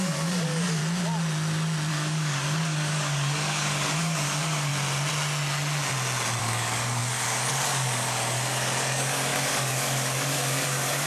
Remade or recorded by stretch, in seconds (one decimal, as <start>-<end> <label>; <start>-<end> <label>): 0.0-0.8 remade; 0.8-1.9 recorded; 1.9-4.7 remade; 4.7-6.4 recorded; 6.4-11.1 remade